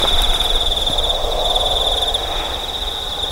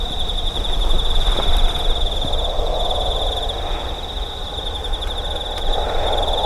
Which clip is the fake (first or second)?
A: first